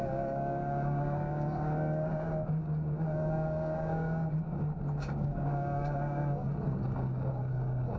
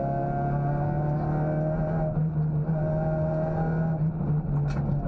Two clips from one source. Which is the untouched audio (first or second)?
second